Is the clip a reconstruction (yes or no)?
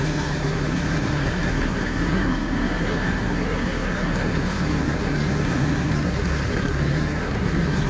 yes